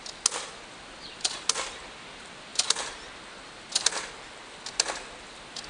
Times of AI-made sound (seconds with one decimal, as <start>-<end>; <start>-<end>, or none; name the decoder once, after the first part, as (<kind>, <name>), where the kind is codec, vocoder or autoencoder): none